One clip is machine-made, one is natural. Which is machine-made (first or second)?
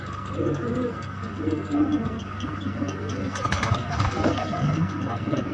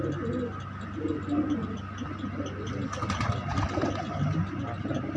first